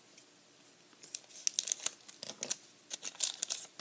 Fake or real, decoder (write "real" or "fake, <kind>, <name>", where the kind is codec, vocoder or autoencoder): real